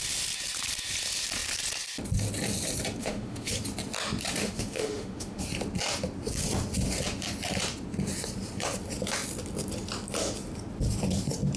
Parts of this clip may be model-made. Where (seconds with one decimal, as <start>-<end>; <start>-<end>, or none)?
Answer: 3.0-3.5; 4.4-5.4